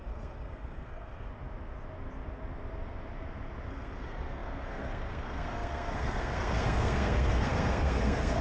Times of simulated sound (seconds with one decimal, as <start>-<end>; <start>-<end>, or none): 0.0-1.3; 3.7-8.4

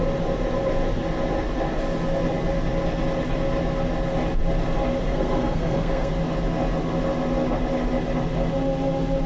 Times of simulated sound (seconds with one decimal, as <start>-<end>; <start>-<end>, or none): 5.0-6.1

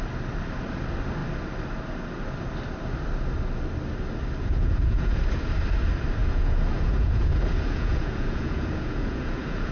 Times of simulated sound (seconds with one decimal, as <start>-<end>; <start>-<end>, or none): 4.4-5.2; 6.2-9.7

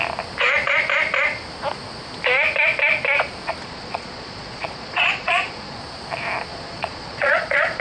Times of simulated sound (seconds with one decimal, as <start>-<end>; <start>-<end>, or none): 3.6-5.8; 6.5-7.8

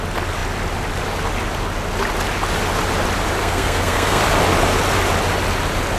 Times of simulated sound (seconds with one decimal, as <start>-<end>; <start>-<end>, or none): 3.4-4.2

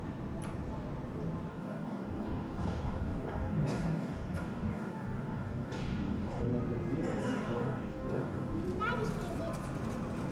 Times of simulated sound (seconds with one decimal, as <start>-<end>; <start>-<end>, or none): 1.5-6.5; 7.2-8.6